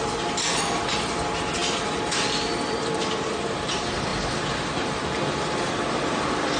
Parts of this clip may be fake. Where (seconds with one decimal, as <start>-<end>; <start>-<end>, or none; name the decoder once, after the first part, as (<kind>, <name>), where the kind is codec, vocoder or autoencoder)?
none